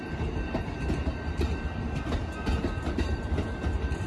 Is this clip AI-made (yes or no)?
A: no